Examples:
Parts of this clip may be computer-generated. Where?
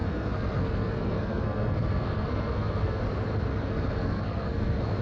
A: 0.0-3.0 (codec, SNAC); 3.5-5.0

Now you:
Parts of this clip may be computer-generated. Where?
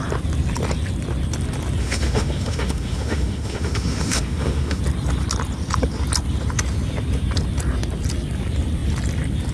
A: 1.8-4.8 (autoencoder, DAC-VAE)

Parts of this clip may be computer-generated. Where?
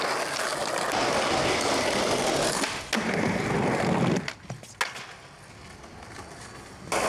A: none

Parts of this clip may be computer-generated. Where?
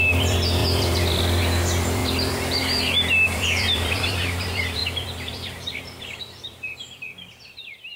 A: 0.0-8.0 (vocoder, BigVGAN v2)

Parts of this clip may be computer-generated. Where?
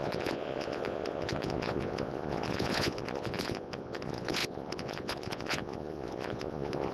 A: 0.0-6.9 (vocoder, Vocos)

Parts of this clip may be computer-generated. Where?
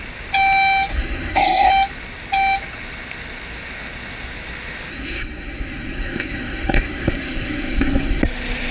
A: 0.9-1.7 (codec, SNAC); 4.9-8.2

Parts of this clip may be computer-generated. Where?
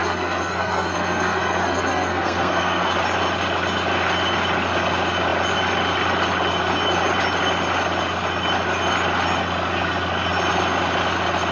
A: 0.0-2.9 (codec, SNAC)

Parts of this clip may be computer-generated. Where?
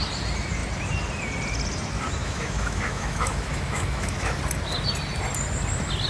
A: 2.2-4.4 (autoencoder, DAC-VAE)